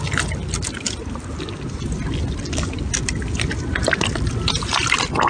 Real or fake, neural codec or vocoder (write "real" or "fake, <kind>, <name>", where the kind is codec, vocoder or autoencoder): real